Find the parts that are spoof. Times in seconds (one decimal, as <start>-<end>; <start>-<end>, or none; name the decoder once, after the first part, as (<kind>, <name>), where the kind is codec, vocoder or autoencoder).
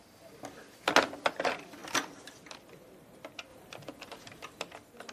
none